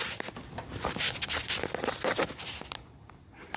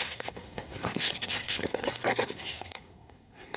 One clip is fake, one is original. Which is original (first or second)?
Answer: first